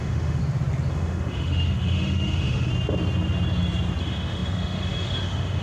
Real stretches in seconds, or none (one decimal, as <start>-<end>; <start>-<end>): 0.4-0.9; 2.7-4.0